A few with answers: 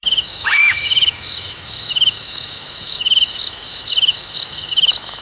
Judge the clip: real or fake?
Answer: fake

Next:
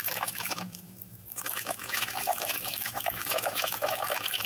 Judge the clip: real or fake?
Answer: fake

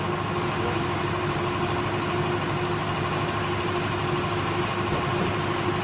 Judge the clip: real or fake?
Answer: real